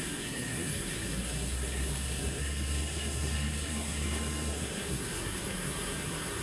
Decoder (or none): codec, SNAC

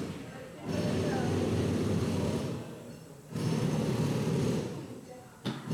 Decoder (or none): vocoder, BigVGAN v2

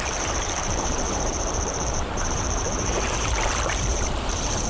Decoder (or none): vocoder, BigVGAN v2